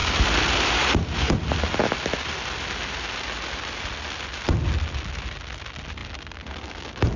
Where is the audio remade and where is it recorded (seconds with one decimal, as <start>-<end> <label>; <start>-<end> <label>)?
0.0-7.2 recorded